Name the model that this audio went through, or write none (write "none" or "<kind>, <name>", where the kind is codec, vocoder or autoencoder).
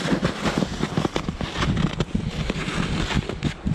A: none